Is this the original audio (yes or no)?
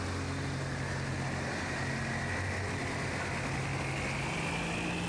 yes